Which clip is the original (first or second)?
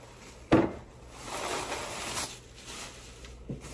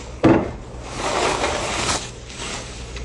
first